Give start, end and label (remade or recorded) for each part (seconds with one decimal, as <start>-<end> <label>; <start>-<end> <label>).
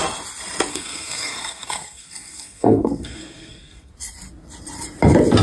0.0-0.7 recorded; 0.7-3.9 remade; 3.9-5.4 recorded